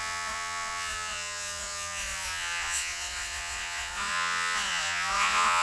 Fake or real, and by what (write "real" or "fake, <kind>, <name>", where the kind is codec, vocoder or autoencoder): fake, vocoder, Vocos